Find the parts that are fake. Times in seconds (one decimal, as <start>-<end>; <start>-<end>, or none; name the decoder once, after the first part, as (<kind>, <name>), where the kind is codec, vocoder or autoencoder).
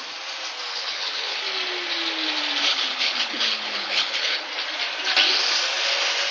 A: 0.7-1.4 (codec, HILCodec); 2.6-4.5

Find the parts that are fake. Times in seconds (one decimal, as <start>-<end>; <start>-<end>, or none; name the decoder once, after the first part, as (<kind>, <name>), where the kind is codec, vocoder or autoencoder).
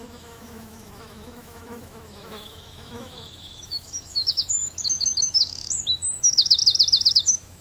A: 0.0-6.6 (autoencoder, DAC-VAE); 7.1-7.6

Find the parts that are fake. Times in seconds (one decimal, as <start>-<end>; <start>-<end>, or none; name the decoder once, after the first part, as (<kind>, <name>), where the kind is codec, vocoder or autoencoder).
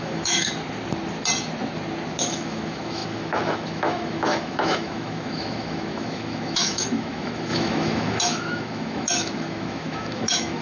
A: 0.0-0.5 (autoencoder, DAC-VAE); 2.2-10.6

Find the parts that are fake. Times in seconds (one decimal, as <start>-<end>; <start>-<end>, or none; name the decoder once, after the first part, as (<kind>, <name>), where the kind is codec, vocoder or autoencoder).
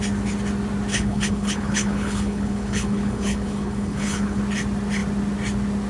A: 0.9-4.4 (codec, HILCodec)